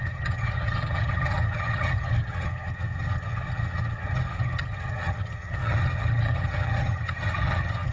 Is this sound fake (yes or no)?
yes